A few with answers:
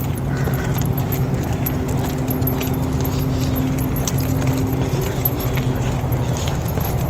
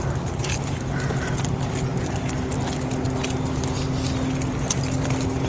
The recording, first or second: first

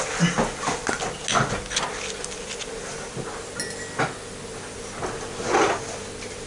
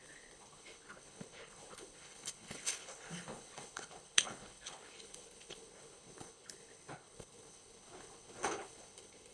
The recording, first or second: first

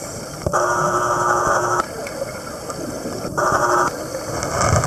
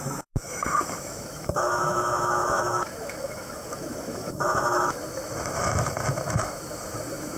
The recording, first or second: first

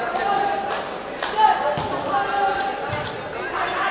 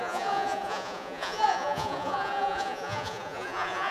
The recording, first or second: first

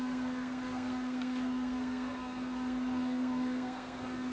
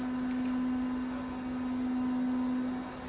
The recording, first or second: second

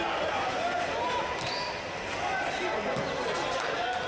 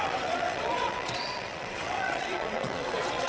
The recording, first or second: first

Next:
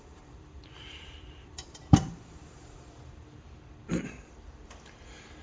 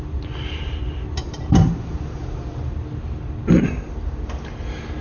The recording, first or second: second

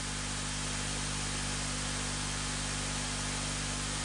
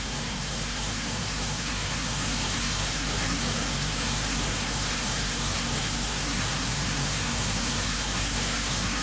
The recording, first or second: first